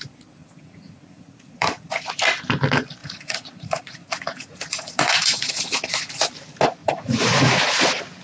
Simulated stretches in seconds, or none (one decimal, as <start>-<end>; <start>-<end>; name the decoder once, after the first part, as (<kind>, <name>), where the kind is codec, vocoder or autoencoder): 0.4-2.1 (vocoder, Vocos); 3.0-6.1; 6.8-7.3